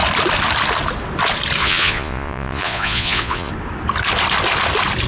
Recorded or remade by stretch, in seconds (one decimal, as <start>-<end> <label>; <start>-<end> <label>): 0.0-1.6 recorded; 1.6-3.5 remade; 3.5-5.1 recorded

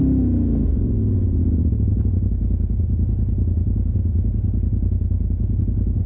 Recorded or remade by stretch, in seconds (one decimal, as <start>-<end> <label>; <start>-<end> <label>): 0.0-6.1 recorded